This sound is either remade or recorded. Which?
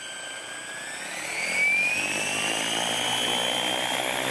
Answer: recorded